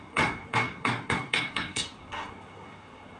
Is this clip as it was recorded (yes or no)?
no